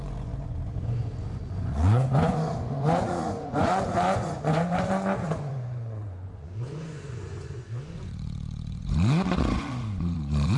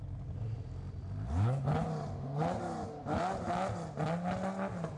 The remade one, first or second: first